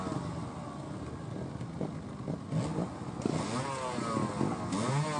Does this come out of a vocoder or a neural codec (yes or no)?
no